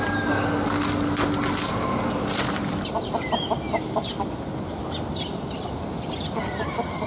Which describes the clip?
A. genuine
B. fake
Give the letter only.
A